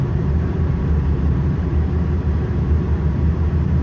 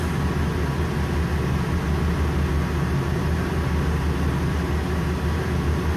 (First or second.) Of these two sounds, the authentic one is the second